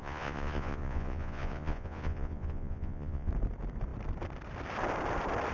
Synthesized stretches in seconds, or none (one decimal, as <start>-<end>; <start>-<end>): 0.0-3.3